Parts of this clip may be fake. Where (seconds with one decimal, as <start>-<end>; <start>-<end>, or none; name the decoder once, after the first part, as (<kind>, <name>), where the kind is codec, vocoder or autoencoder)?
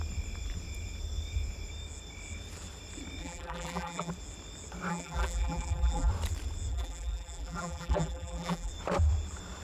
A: 3.2-4.1 (vocoder, BigVGAN v2); 4.9-6.1; 6.7-8.7